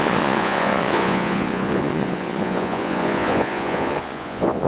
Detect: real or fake fake